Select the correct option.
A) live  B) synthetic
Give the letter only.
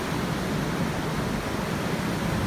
A